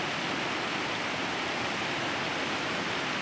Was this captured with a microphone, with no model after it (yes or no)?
yes